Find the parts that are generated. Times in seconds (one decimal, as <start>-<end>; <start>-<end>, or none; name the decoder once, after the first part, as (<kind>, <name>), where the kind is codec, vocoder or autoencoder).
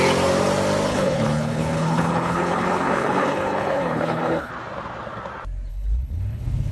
0.9-4.5 (codec, HILCodec); 5.7-6.7